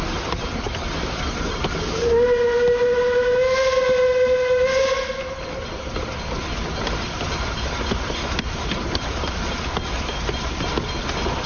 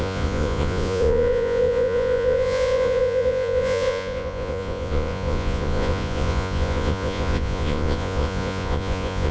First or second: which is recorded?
first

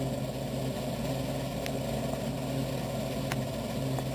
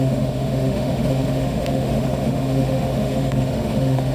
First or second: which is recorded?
first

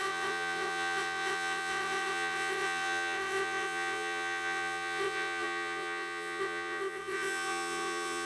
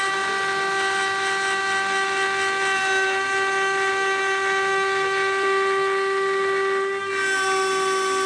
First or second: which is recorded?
second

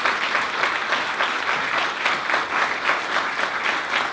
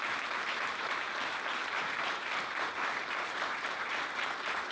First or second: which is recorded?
first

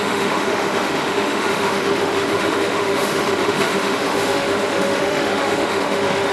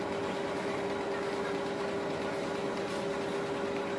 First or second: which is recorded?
second